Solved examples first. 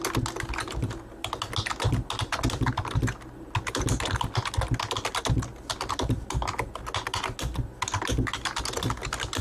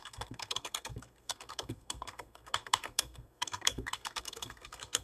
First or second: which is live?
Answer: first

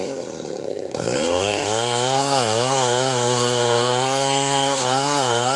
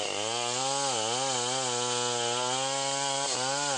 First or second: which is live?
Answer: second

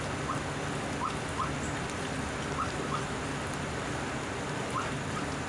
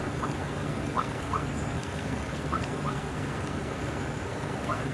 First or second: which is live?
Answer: first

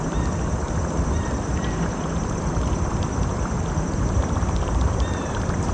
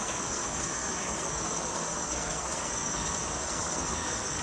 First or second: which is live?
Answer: first